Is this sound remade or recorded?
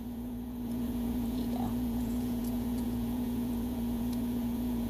remade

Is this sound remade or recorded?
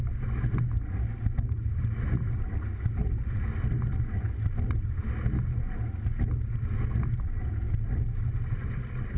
recorded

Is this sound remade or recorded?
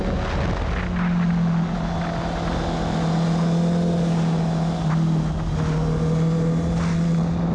recorded